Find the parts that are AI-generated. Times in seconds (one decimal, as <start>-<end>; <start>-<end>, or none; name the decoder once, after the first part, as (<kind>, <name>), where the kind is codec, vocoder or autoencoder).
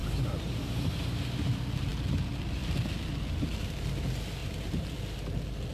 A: 0.0-1.3 (vocoder, BigVGAN v2); 4.4-4.9